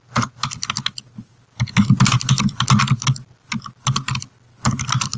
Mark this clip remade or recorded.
recorded